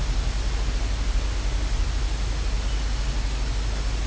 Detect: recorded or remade recorded